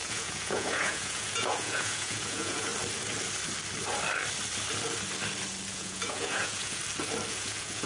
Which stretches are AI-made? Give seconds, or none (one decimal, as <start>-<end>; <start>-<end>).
0.0-2.7; 5.7-6.8; 7.3-7.9